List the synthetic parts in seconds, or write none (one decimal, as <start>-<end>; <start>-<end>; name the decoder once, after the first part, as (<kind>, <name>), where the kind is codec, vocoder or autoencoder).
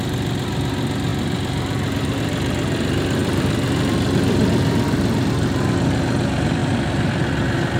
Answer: 1.1-2.2 (vocoder, BigVGAN v2); 3.2-5.3; 6.6-7.1